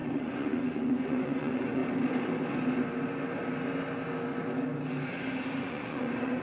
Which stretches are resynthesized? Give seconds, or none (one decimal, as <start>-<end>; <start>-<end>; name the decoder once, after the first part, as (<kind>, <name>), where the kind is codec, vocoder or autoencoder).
0.0-1.8 (vocoder, Vocos); 5.6-6.4